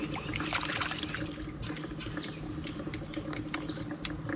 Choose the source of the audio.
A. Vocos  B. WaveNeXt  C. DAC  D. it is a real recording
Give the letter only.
D